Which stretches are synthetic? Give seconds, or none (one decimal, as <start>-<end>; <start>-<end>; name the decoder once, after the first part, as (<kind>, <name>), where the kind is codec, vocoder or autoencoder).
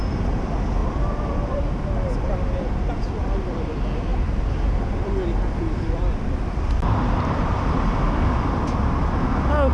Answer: 0.8-1.8 (vocoder, BigVGAN v2); 4.1-8.9